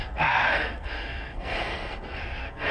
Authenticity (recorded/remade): remade